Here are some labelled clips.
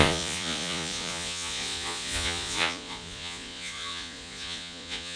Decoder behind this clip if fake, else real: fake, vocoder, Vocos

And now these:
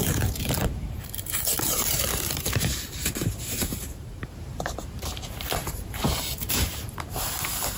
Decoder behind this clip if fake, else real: fake, vocoder, BigVGAN v2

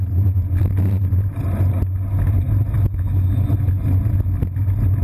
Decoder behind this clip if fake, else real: real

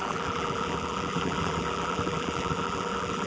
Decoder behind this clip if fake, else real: fake, vocoder, BigVGAN v2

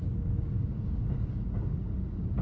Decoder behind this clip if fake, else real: fake, codec, DAC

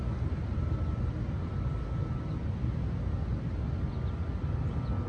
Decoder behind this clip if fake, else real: real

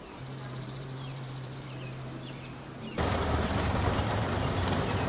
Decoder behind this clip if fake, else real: fake, vocoder, BigVGAN v2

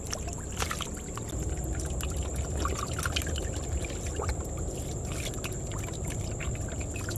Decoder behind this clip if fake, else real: real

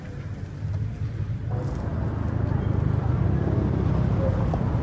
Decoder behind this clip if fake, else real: real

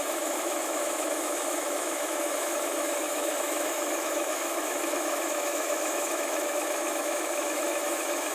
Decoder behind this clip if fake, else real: fake, autoencoder, DAC-VAE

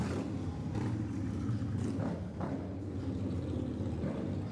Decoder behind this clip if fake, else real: real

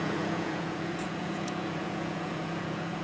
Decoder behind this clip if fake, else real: fake, vocoder, Vocos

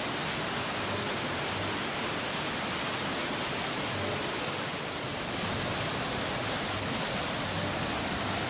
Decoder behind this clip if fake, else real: real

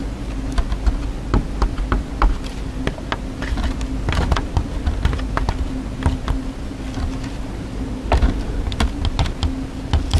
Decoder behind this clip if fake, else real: real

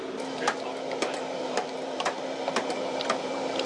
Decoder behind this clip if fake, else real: fake, vocoder, BigVGAN v2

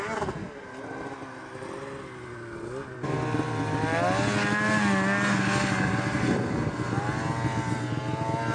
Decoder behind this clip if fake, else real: real